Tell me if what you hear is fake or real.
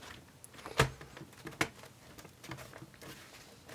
real